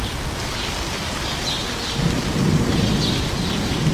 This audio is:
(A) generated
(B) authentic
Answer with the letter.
B